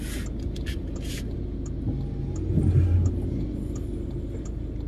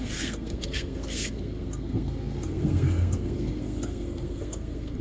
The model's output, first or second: second